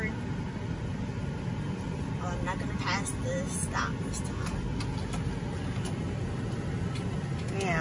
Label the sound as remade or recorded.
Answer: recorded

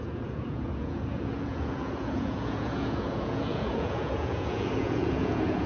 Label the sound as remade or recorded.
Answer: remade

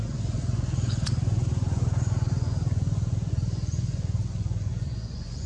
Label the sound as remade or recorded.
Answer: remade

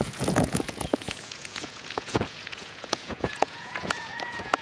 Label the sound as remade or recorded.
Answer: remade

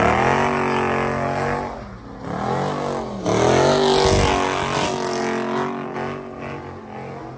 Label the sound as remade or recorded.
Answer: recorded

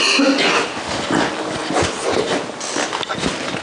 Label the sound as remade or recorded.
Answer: recorded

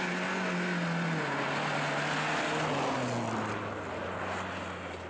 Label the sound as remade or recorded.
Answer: recorded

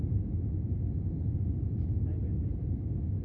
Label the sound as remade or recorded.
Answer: recorded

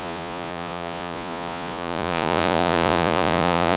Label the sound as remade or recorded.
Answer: remade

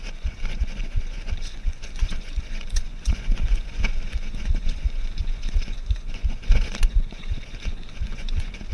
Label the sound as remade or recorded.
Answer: remade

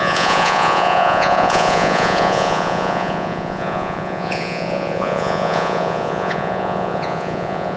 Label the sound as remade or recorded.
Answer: remade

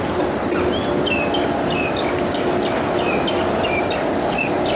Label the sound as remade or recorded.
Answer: recorded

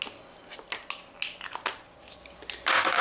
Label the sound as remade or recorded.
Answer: recorded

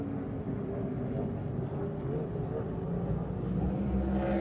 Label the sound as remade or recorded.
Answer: recorded